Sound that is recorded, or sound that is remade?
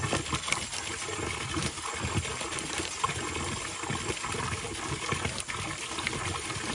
recorded